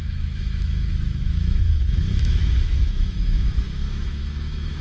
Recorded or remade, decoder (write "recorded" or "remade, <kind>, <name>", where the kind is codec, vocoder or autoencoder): remade, autoencoder, DAC-VAE